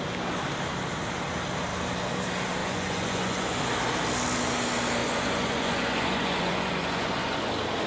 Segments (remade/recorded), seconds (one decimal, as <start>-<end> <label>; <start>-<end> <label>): 0.0-2.6 recorded; 2.6-3.6 remade; 3.6-5.0 recorded; 5.0-7.5 remade; 7.5-7.9 recorded